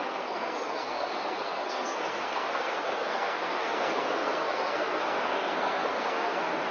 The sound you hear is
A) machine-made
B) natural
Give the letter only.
A